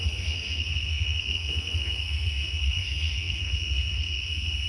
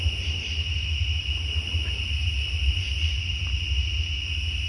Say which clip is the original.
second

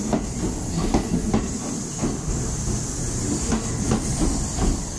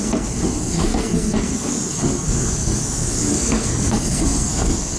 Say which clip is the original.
first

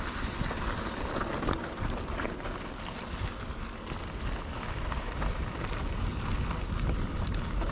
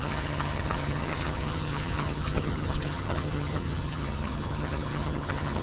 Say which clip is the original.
first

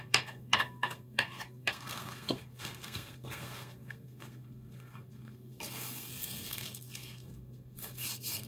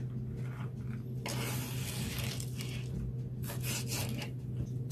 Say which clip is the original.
second